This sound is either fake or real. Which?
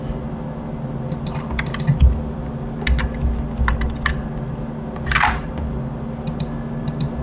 real